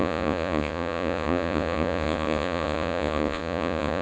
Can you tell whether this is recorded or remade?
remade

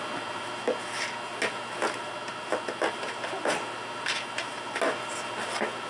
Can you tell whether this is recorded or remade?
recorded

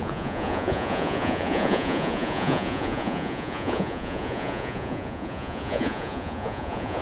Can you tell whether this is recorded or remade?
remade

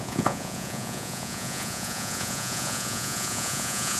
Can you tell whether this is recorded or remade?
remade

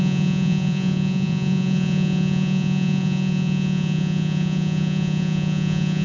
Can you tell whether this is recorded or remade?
remade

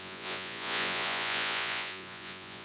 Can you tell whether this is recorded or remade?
remade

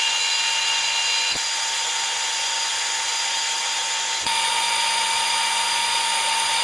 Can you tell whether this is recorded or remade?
remade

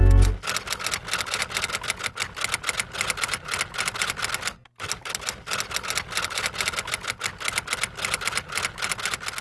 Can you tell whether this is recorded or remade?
recorded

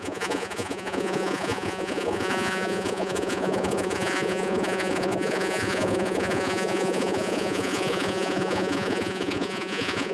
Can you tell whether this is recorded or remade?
remade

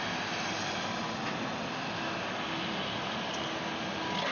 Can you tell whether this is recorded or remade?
recorded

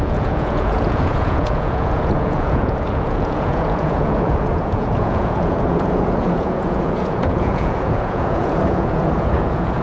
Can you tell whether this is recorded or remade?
remade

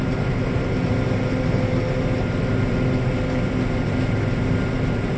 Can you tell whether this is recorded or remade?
recorded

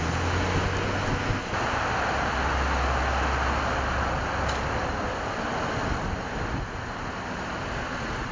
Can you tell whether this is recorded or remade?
recorded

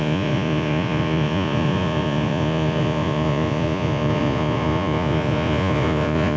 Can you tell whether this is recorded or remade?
remade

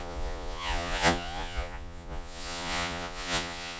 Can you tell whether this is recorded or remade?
remade